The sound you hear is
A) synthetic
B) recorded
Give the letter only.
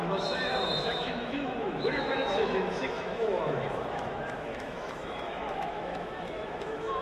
A